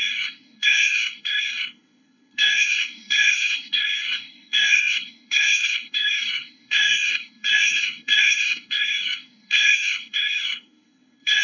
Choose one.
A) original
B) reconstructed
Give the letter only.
B